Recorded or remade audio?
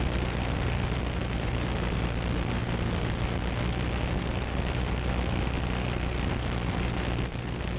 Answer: recorded